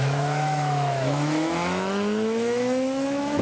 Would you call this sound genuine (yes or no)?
no